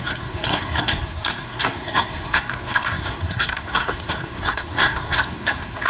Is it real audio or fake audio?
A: fake